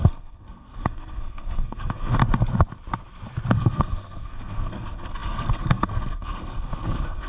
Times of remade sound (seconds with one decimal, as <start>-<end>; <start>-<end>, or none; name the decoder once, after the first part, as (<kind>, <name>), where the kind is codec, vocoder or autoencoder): 0.0-2.2 (codec, SNAC); 3.5-7.3